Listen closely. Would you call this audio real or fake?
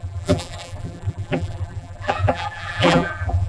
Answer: fake